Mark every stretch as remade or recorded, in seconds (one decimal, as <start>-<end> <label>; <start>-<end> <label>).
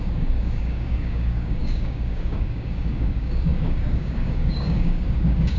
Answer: 0.0-5.6 remade